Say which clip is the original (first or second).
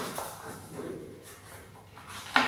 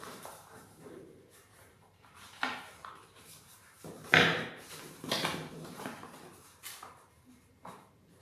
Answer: first